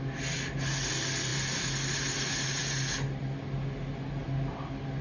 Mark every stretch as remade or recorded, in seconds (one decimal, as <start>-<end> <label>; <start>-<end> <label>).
0.0-5.0 recorded